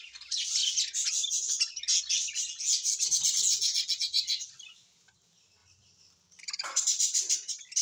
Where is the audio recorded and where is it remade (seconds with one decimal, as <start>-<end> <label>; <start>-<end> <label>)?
0.0-5.6 recorded; 5.6-7.8 remade